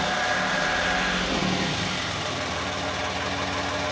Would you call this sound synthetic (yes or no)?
no